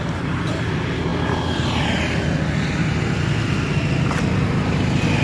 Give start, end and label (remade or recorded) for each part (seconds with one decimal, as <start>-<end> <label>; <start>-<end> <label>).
0.0-5.2 recorded